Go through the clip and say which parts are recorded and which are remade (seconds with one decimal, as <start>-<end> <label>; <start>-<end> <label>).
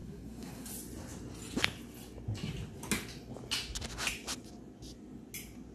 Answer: 0.0-0.7 remade; 0.7-5.7 recorded